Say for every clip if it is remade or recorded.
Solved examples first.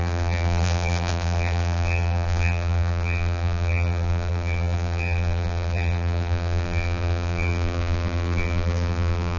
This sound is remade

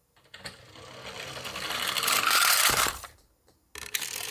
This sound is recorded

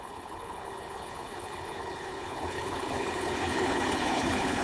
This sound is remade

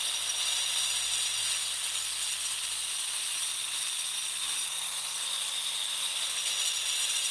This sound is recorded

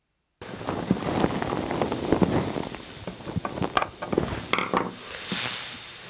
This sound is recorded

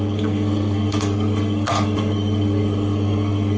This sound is remade